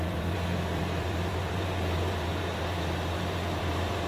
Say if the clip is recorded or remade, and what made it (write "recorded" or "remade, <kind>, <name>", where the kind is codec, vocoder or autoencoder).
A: remade, vocoder, BigVGAN v2